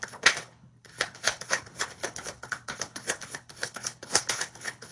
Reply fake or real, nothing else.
fake